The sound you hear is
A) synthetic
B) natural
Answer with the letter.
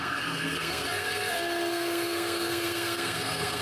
A